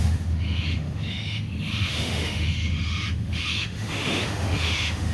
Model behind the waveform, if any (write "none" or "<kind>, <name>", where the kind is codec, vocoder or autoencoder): autoencoder, DAC-VAE